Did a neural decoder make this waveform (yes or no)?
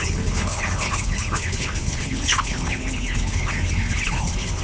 yes